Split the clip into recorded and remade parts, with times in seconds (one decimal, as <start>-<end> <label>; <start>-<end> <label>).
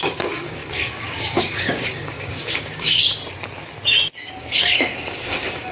0.0-3.2 remade; 3.2-4.4 recorded; 4.4-5.7 remade